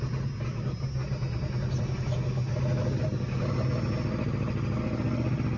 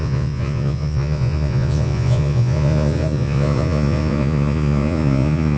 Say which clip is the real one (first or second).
first